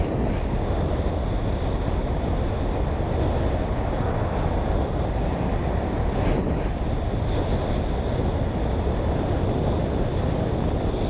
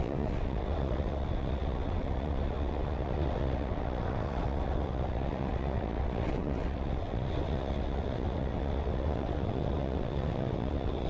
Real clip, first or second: first